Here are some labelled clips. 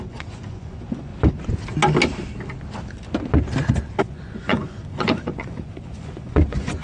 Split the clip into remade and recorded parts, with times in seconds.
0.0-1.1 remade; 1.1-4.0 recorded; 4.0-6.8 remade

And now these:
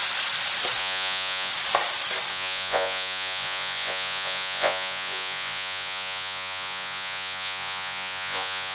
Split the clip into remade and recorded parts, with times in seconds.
0.0-0.8 recorded; 0.8-1.5 remade; 1.5-2.3 recorded; 2.3-8.7 remade

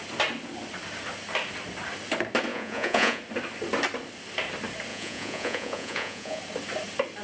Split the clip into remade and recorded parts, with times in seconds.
0.0-2.5 recorded; 2.5-3.2 remade; 3.2-4.9 recorded; 4.9-6.4 remade; 6.4-7.2 recorded

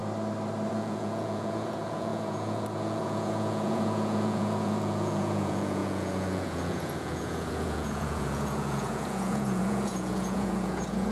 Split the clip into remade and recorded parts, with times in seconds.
0.0-0.7 recorded; 0.7-11.1 remade

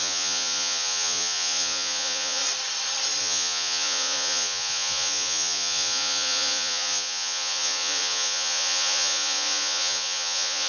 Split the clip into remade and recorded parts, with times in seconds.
0.0-2.4 remade; 2.4-3.2 recorded; 3.2-10.7 remade

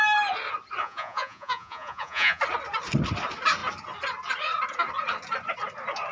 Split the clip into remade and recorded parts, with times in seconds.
0.0-0.8 recorded; 0.8-2.4 remade; 2.4-6.1 recorded